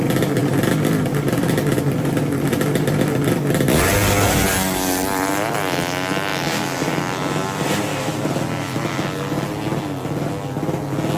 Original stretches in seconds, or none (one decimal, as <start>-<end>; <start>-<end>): 0.0-11.2